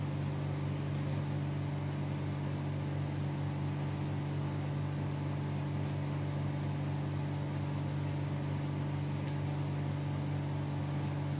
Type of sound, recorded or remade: recorded